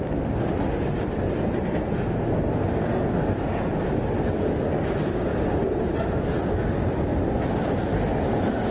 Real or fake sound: real